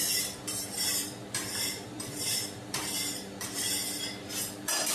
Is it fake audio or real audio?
fake